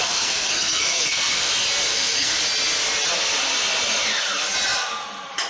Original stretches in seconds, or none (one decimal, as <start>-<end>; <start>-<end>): 1.5-1.9; 2.4-5.5